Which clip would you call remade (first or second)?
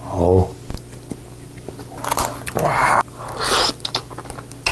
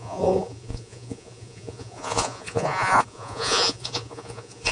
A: second